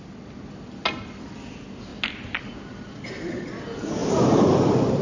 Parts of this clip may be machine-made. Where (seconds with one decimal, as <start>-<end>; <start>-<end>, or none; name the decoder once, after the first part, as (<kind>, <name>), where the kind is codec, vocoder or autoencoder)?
none